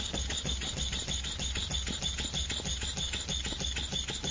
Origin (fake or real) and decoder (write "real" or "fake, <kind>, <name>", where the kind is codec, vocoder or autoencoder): real